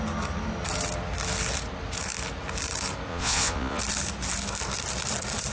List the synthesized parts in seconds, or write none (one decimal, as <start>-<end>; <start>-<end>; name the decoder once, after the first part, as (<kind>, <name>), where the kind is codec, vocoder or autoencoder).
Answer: 3.1-3.8 (vocoder, Vocos)